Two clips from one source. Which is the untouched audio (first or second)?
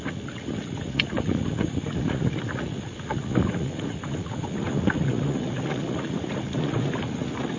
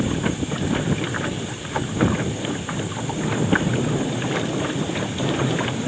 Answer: second